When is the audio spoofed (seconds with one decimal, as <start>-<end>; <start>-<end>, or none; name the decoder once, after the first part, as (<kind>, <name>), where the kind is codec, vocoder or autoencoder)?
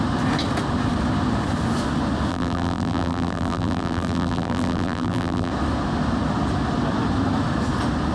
2.3-5.5 (vocoder, BigVGAN v2)